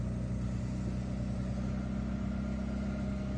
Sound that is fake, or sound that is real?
real